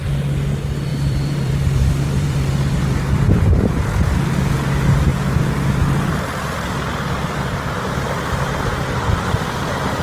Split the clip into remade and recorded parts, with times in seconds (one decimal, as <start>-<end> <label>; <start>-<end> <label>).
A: 0.0-0.9 recorded; 0.9-2.9 remade; 2.9-8.7 recorded; 8.7-9.6 remade; 9.6-10.0 recorded